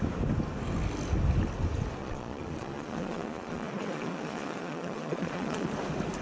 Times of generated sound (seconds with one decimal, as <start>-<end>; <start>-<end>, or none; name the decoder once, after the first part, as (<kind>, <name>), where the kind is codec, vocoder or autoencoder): 2.0-5.7 (vocoder, Vocos)